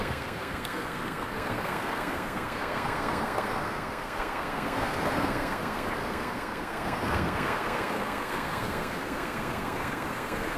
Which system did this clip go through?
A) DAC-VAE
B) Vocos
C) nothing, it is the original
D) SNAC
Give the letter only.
D